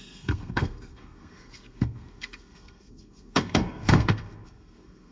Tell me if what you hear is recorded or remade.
remade